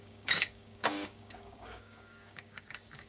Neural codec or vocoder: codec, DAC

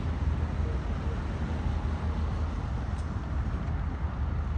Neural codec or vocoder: none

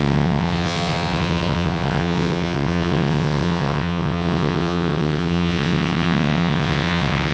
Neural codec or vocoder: vocoder, WaveNeXt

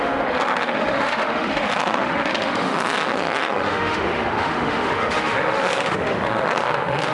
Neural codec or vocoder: autoencoder, DAC-VAE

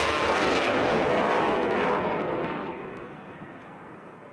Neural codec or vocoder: codec, SNAC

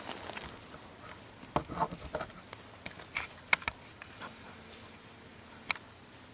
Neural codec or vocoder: none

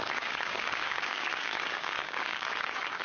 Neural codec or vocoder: codec, DAC